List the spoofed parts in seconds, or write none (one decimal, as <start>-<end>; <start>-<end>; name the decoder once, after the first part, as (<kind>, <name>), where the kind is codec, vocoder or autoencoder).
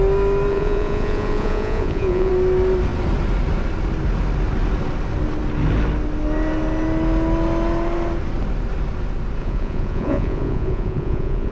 0.5-2.3 (vocoder, Vocos); 9.4-11.5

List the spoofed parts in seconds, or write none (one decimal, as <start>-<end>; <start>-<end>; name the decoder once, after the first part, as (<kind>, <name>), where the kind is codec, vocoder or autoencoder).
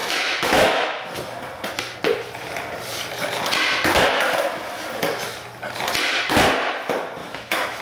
0.0-1.1 (autoencoder, DAC-VAE); 7.2-7.8